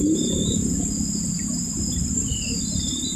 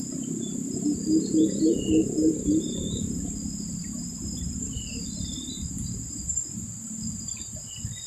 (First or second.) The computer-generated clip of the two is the second